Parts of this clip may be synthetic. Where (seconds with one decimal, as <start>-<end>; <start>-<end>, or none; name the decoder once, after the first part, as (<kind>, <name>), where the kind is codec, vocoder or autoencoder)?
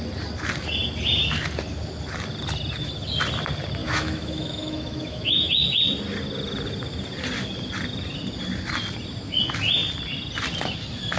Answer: 3.8-5.5 (autoencoder, DAC-VAE)